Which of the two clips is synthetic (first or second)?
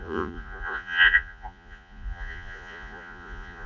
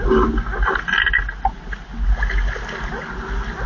first